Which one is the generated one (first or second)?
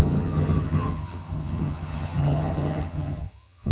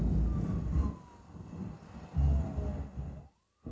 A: first